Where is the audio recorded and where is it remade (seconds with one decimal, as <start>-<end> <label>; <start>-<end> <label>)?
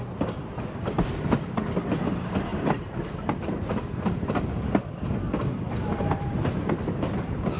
0.0-2.5 recorded; 2.5-3.7 remade; 3.7-5.8 recorded; 5.8-6.7 remade; 6.7-7.6 recorded